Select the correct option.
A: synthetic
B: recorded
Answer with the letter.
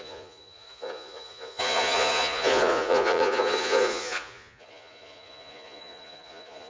A